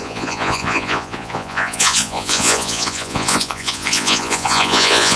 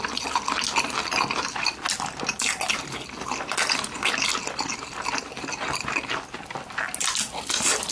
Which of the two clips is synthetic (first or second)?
first